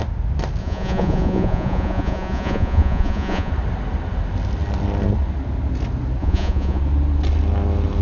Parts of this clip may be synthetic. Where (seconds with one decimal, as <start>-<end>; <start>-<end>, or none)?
0.6-3.5; 6.2-6.8